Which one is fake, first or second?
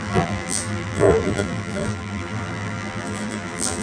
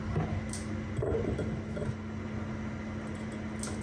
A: first